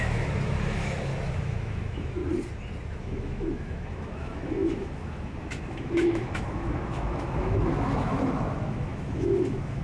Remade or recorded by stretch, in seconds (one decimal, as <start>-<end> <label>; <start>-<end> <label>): 0.0-2.2 remade; 2.2-3.0 recorded; 3.0-9.8 remade